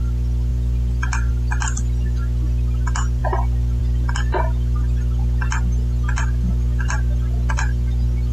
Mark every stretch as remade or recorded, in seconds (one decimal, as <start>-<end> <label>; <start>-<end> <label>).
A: 0.0-0.5 recorded; 0.5-1.3 remade; 1.3-8.3 recorded